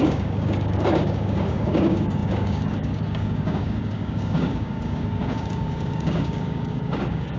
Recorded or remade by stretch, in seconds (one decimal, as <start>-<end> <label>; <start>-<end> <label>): 0.0-7.4 remade